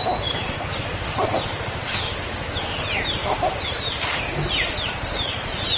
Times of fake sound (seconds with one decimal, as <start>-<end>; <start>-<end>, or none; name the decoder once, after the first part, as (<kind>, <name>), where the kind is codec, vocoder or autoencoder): 0.4-1.7 (vocoder, BigVGAN v2); 3.2-5.8